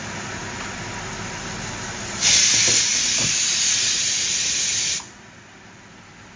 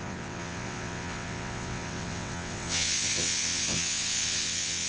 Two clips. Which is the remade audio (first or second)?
second